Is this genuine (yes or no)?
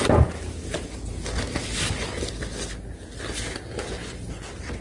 yes